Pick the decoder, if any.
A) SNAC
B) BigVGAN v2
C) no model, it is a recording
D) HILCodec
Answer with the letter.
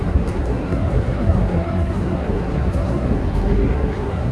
A